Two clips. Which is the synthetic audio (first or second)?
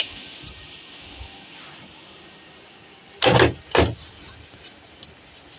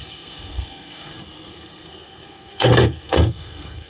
second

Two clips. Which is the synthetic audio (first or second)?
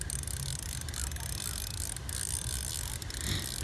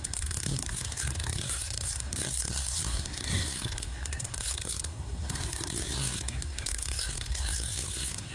second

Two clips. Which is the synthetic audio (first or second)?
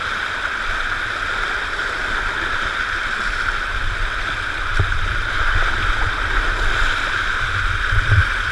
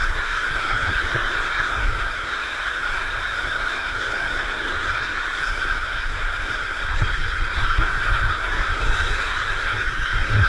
second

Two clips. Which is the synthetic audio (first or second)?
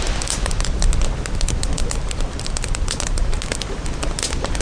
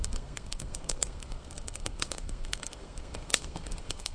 second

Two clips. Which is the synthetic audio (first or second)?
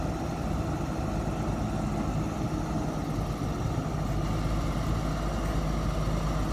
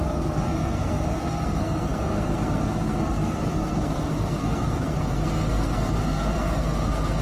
second